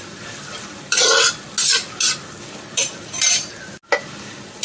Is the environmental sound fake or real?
real